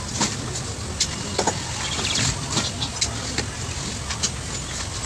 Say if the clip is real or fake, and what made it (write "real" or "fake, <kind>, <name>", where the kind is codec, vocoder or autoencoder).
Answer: real